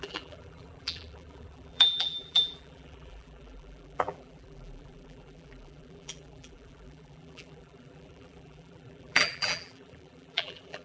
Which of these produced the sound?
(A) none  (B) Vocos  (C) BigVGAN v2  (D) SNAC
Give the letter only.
C